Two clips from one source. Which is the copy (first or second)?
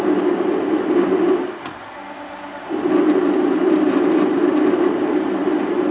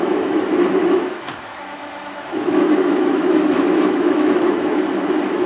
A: second